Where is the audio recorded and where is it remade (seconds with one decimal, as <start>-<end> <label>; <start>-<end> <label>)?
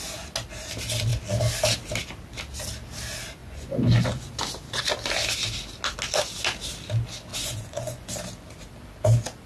0.0-3.4 recorded; 3.4-4.3 remade; 4.3-7.3 recorded; 7.3-8.1 remade; 8.1-9.5 recorded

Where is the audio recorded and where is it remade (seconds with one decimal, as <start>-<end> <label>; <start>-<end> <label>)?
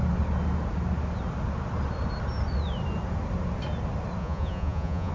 0.0-4.2 recorded; 4.2-5.1 remade